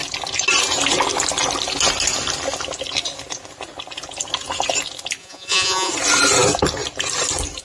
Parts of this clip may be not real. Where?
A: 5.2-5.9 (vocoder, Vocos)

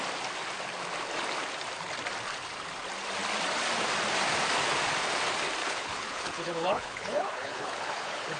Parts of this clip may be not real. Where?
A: 5.6-8.4 (codec, HILCodec)

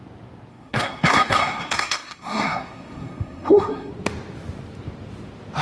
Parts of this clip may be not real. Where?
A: 0.5-3.9 (codec, SNAC)

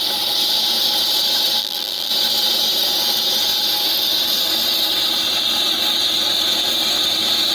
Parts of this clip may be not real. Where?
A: 1.6-2.1 (vocoder, BigVGAN v2)

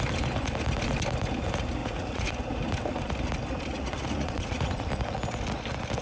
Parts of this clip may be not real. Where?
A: 1.8-2.3 (vocoder, Vocos); 3.7-4.9

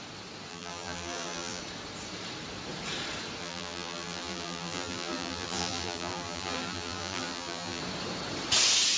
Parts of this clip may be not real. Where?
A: 0.5-1.6 (vocoder, BigVGAN v2); 3.4-7.8

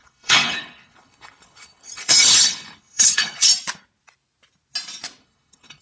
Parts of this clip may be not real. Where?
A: 0.0-3.5 (codec, HILCodec); 5.2-5.8